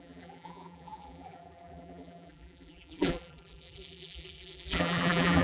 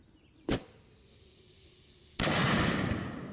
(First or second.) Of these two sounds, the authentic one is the second